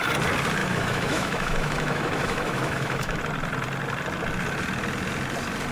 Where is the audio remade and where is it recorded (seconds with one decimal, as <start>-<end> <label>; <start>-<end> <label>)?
0.0-0.6 recorded; 0.6-3.2 remade; 3.2-5.7 recorded